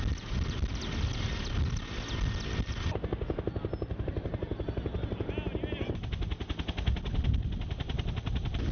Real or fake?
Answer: real